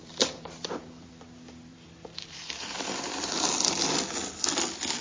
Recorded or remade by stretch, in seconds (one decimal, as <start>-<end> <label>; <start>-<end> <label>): 0.0-1.1 remade; 1.1-1.7 recorded; 1.7-3.3 remade; 3.3-5.0 recorded